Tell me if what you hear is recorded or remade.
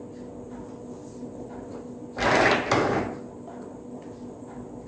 recorded